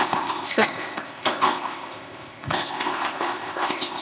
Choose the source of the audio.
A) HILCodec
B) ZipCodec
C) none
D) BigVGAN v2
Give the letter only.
B